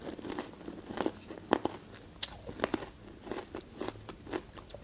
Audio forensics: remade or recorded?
recorded